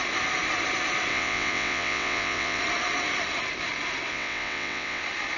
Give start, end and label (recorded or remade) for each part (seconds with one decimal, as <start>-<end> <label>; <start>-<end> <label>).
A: 0.0-1.1 recorded; 1.1-2.6 remade; 2.6-4.1 recorded; 4.1-5.0 remade; 5.0-5.4 recorded